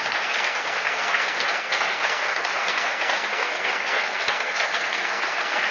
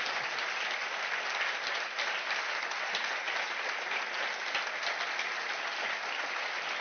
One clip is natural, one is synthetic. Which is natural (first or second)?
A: second